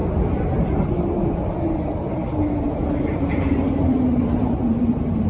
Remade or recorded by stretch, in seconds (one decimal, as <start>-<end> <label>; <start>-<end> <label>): 0.0-5.3 remade